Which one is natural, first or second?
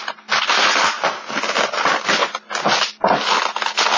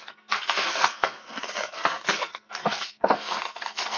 first